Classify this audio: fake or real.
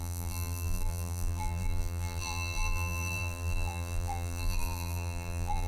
fake